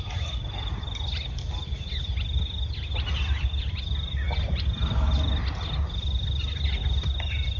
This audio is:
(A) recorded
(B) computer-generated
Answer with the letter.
A